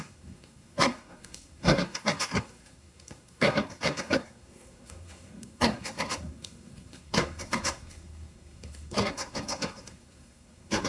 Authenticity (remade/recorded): remade